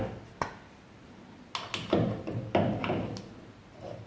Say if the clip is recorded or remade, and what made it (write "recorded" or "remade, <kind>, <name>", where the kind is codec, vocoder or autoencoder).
recorded